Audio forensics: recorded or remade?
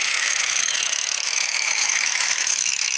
remade